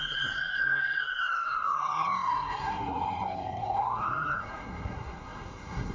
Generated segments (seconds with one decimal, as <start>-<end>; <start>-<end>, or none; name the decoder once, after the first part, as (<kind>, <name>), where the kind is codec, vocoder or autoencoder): 0.0-5.9 (codec, SNAC)